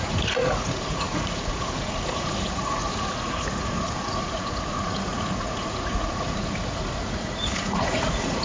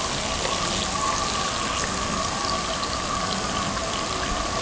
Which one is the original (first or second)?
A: second